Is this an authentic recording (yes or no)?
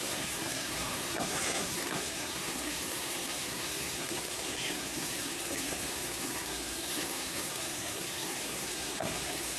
no